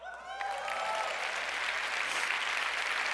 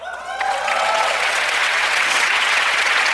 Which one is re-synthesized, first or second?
second